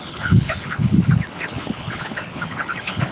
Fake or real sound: fake